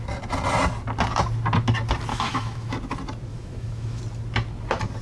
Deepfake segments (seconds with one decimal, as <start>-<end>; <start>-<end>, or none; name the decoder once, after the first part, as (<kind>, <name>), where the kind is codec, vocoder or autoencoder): 2.1-2.7 (autoencoder, DAC-VAE); 3.3-4.0